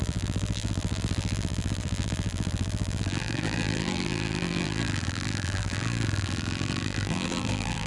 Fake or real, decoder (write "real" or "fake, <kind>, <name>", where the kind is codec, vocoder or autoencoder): fake, vocoder, BigVGAN v2